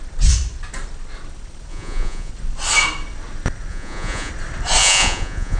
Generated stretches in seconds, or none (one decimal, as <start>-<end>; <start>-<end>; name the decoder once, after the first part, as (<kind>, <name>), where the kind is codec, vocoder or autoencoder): 1.7-2.3 (vocoder, Vocos); 3.7-4.3; 4.8-5.6